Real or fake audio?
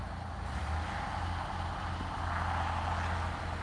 real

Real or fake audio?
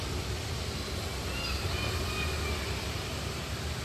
real